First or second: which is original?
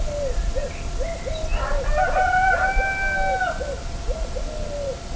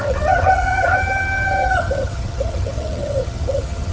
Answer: first